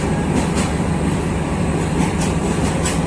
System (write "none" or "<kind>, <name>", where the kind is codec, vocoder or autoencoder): none